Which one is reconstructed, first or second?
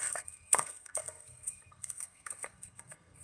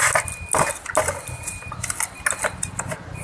first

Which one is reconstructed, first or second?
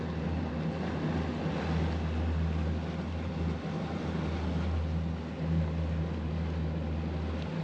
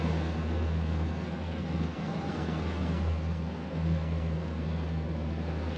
second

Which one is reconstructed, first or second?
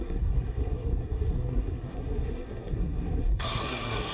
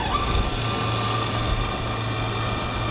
first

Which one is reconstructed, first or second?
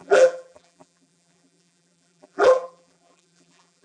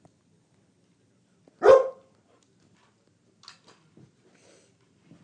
first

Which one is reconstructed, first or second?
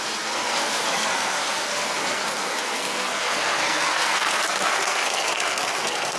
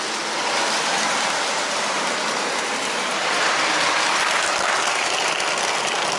first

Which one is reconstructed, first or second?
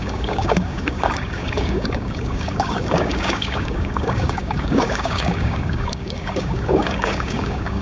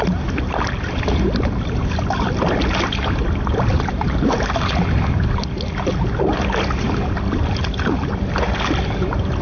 first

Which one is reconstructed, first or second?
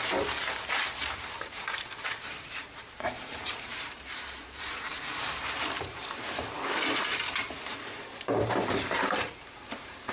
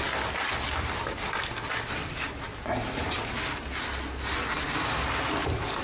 first